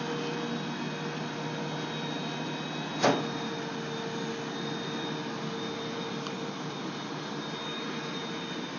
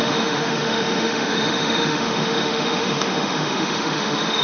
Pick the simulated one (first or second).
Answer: second